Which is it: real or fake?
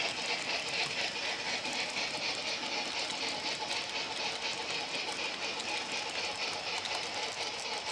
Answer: real